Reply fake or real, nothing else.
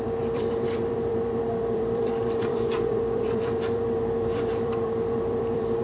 fake